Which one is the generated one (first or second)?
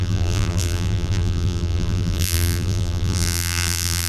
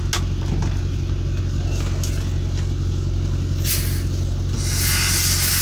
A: first